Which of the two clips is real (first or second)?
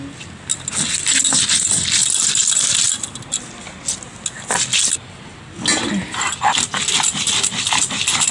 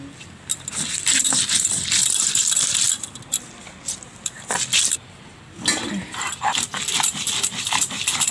first